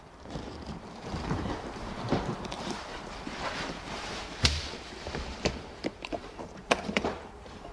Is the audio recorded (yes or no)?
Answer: no